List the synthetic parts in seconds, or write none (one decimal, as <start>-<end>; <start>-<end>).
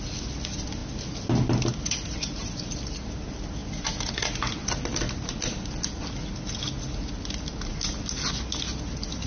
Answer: none